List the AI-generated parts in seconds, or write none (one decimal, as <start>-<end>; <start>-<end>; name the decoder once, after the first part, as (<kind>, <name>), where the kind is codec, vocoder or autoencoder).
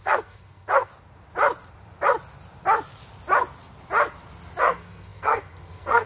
0.0-0.9 (codec, SNAC); 4.6-6.1